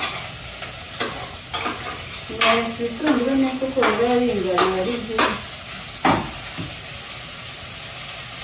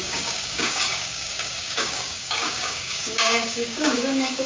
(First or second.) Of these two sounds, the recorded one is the first